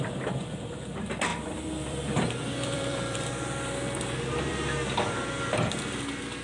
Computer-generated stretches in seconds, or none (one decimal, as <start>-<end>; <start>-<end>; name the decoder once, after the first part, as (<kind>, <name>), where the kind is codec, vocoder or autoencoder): 1.3-3.3 (vocoder, BigVGAN v2)